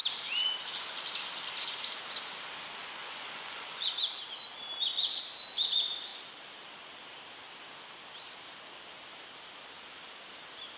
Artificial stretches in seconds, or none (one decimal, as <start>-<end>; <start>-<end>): 3.0-3.9